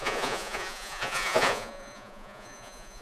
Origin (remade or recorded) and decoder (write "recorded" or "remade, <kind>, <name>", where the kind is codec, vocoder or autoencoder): remade, vocoder, Vocos